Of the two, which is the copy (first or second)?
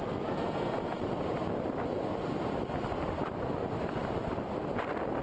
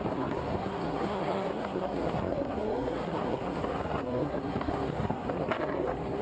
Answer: second